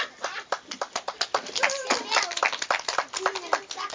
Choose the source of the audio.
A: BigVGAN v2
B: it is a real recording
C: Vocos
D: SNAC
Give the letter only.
B